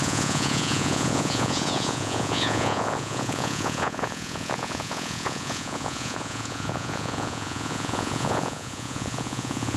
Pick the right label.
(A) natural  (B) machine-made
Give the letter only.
B